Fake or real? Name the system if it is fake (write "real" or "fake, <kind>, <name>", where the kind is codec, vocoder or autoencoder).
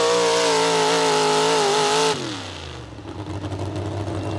real